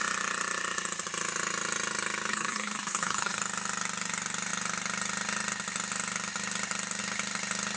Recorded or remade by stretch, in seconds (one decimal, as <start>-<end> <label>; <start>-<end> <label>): 0.0-2.3 recorded; 2.3-3.4 remade; 3.4-7.8 recorded